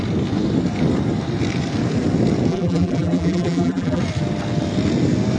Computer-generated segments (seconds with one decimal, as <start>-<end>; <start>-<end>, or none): 2.5-4.0